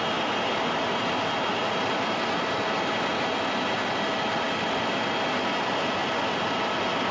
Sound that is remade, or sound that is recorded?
recorded